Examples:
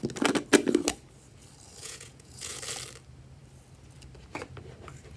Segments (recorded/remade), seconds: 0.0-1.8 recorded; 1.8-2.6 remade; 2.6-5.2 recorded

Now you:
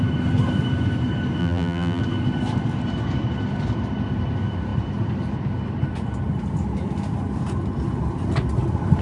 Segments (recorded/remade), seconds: 0.0-1.4 recorded; 1.4-2.0 remade; 2.0-9.0 recorded

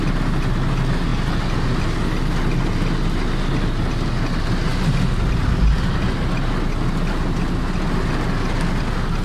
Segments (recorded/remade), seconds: 0.0-9.2 recorded

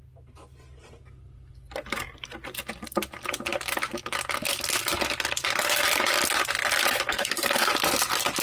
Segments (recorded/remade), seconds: 0.0-7.1 recorded; 7.1-7.7 remade; 7.7-8.4 recorded

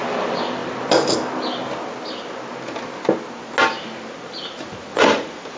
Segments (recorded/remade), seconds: 0.0-4.9 recorded; 4.9-5.6 remade

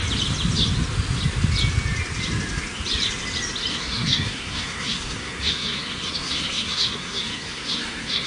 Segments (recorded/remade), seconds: 0.0-3.7 recorded; 3.7-8.3 remade

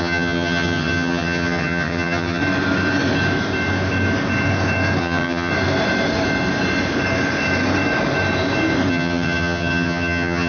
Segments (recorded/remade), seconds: 0.0-2.4 remade; 2.4-5.0 recorded; 5.0-5.5 remade; 5.5-8.9 recorded; 8.9-10.5 remade